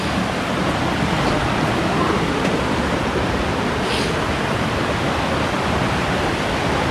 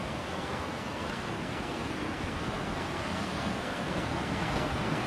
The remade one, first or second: second